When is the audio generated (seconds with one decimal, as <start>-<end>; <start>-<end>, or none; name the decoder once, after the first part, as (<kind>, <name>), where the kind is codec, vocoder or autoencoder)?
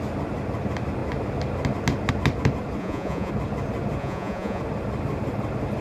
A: 2.8-3.3 (vocoder, Vocos); 4.0-4.6